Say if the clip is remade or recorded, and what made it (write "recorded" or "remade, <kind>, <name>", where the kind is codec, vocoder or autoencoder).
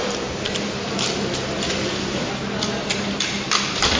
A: recorded